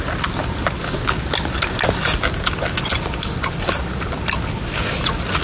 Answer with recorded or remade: recorded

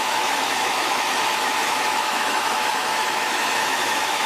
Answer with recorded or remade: remade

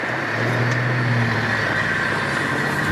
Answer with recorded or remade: recorded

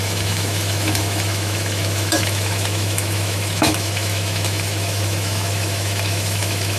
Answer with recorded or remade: remade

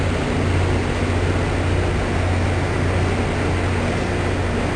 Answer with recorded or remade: recorded